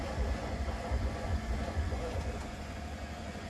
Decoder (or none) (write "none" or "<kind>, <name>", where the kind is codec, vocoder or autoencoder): vocoder, Vocos